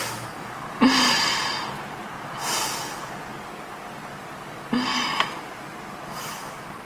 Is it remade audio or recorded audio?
recorded